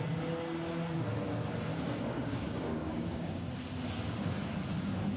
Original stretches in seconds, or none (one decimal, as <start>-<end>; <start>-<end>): 0.0-1.7; 3.4-5.2